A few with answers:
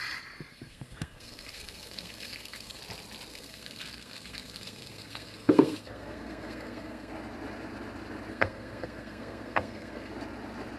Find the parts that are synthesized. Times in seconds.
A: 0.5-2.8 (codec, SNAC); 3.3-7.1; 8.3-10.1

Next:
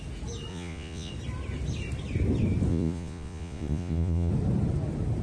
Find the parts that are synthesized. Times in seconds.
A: 0.5-1.1 (vocoder, Vocos); 2.7-4.3

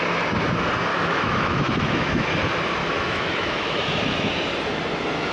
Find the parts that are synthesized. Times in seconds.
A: 0.9-2.3 (autoencoder, DAC-VAE); 2.8-4.3

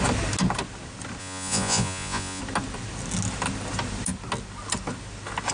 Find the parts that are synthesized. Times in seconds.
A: 1.2-2.4 (vocoder, Vocos)

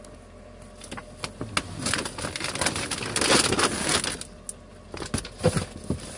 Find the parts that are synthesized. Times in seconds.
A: none